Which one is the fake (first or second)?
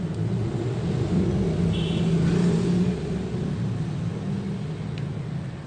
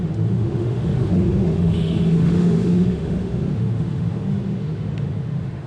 second